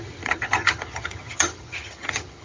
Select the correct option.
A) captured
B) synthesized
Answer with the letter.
B